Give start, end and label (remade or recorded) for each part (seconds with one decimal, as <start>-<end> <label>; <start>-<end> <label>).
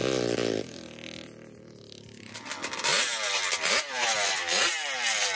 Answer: 0.0-2.9 recorded; 2.9-4.4 remade; 4.4-5.4 recorded